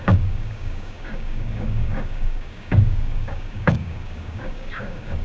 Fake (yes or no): yes